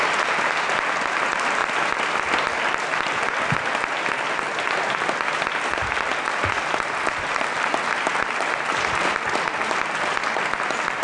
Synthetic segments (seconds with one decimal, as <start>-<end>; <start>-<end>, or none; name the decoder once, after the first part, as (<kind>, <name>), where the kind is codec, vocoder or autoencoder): none